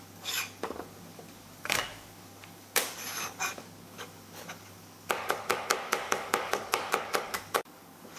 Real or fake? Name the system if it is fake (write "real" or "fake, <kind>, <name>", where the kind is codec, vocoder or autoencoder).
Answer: fake, codec, DAC